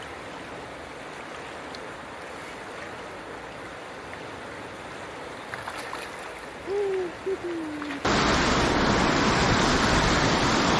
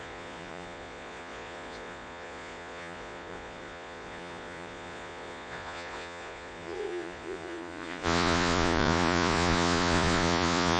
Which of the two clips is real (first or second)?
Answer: first